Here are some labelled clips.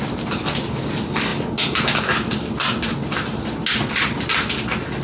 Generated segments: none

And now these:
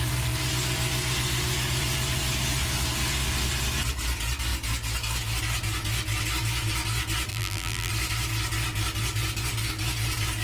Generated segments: 7.3-7.9 (vocoder, BigVGAN v2)

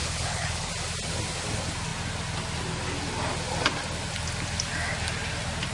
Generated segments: 0.0-0.7 (codec, HILCodec)

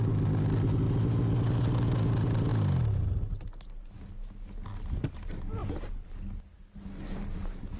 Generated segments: none

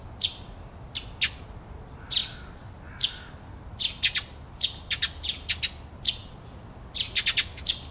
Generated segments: none

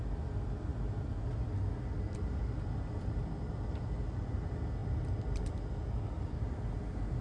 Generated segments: none

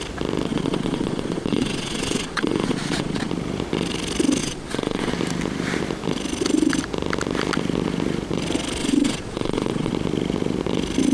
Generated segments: 0.5-3.3 (vocoder, Vocos); 4.4-5.1; 8.8-9.9

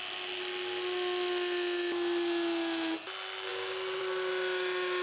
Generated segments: none